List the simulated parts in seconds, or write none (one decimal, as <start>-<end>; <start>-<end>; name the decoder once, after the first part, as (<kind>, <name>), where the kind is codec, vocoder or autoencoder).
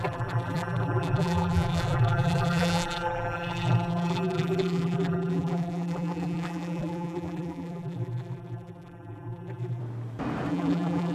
0.0-9.8 (vocoder, BigVGAN v2); 10.5-11.1